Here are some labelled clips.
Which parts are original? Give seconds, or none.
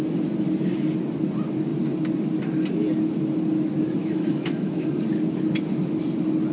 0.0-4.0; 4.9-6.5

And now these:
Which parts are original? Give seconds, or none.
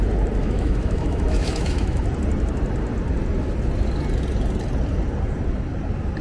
0.0-0.4; 2.0-6.2